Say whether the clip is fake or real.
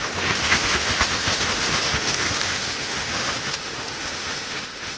fake